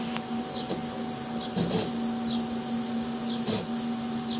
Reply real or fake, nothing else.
real